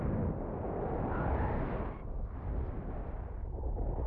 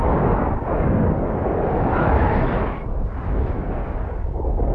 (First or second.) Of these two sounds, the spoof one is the second